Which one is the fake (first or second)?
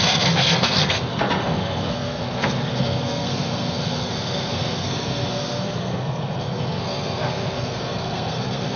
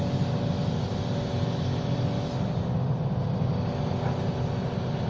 first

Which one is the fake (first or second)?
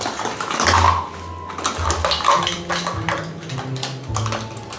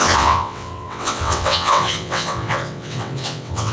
second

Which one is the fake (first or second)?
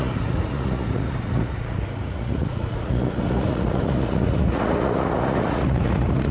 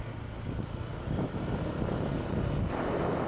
first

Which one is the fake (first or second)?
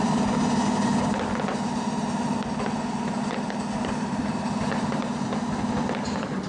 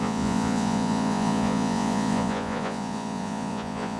second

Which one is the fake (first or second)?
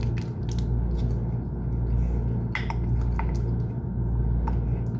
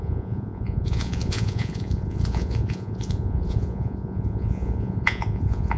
second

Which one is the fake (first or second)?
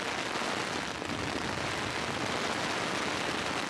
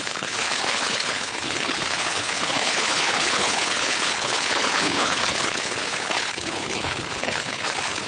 second